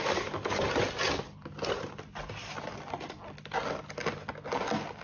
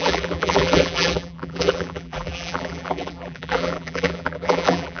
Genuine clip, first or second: first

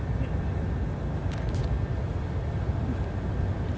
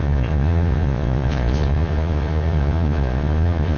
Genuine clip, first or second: first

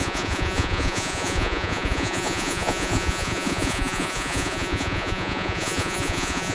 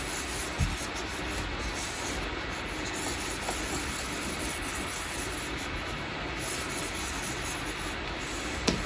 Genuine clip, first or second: second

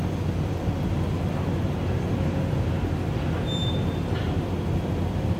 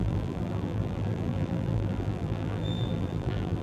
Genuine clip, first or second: first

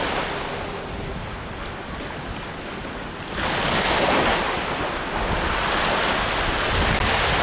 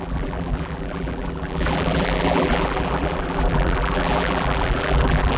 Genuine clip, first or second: first